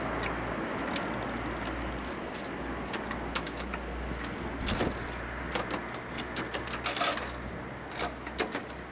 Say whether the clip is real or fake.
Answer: real